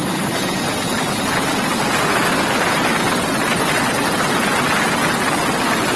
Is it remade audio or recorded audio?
recorded